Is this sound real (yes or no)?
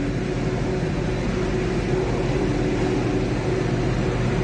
yes